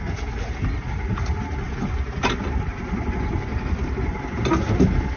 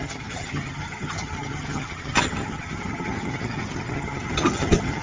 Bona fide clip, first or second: first